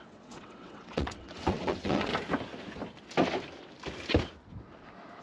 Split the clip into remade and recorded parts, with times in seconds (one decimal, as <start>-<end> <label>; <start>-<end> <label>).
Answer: 0.0-2.1 remade; 2.1-5.2 recorded